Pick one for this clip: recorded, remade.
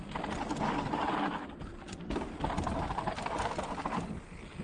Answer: recorded